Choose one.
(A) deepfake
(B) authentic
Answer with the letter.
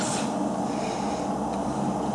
B